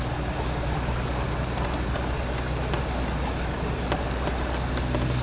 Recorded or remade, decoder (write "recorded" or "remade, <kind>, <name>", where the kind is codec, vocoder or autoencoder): recorded